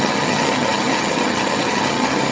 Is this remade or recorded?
remade